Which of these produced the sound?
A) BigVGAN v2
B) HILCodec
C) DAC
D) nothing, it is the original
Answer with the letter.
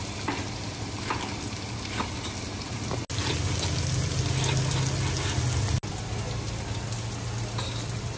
D